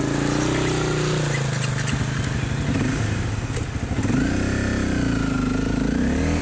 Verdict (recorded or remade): recorded